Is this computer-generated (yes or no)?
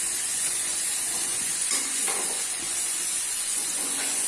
yes